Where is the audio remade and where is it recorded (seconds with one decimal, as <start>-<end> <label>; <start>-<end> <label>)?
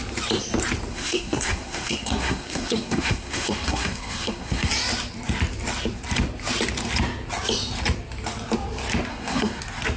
0.0-0.9 recorded; 0.9-4.7 remade; 4.7-9.1 recorded; 9.1-9.6 remade; 9.6-10.0 recorded